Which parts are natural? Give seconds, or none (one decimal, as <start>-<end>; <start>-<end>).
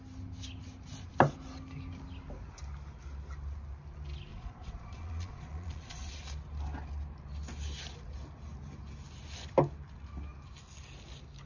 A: 0.0-4.3; 6.1-11.5